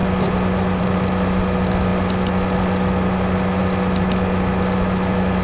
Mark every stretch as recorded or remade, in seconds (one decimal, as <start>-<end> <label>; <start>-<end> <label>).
0.0-5.4 recorded